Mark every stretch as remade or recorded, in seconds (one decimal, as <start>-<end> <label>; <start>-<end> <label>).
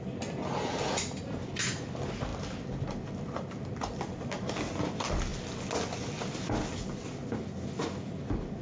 0.0-8.6 recorded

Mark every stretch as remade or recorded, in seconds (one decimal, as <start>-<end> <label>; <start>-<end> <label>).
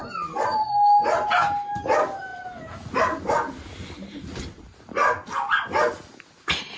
0.0-6.8 recorded